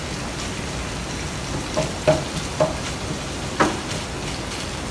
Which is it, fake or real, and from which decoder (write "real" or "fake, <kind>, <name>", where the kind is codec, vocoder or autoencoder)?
real